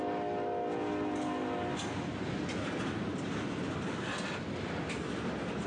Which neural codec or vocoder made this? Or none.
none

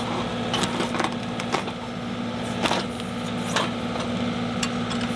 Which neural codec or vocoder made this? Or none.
none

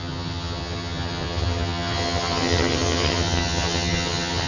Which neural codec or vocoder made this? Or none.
vocoder, HiFi-GAN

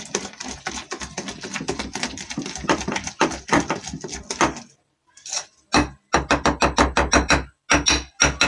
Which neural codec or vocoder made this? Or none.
none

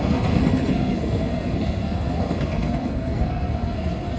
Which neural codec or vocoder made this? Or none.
codec, SNAC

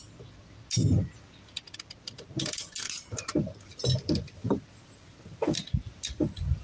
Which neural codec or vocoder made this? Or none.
none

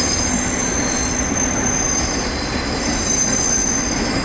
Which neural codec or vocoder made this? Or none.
none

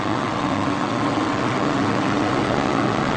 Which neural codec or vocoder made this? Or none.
vocoder, WaveNeXt